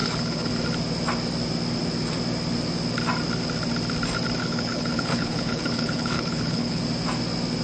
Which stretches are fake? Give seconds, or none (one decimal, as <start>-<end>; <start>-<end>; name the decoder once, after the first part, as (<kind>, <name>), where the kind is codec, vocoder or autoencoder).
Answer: 0.0-0.5 (codec, HILCodec); 4.4-6.8